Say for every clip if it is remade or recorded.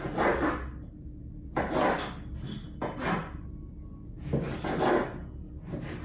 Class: recorded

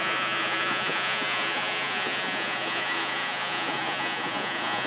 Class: remade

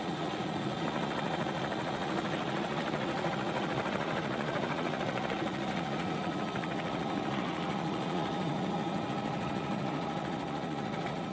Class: remade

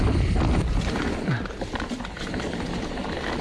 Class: remade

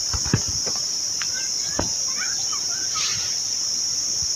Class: recorded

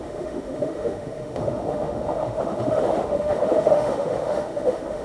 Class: remade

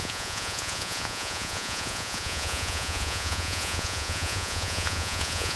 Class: remade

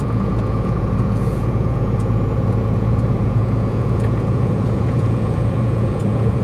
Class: remade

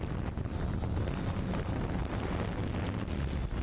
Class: recorded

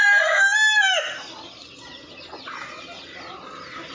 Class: recorded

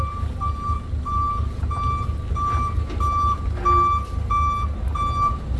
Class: recorded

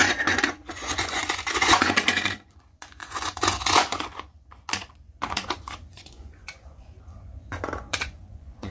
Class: remade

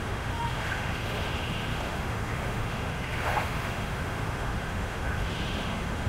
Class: remade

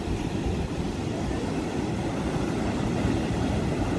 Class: recorded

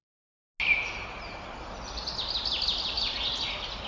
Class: recorded